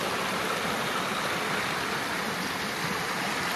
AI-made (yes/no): no